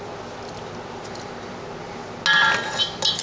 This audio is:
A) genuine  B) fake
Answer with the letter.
A